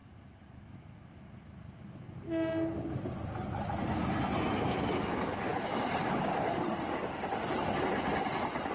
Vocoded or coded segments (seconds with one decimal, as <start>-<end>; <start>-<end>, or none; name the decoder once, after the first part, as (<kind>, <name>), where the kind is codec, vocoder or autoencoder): 5.5-6.3 (codec, DAC)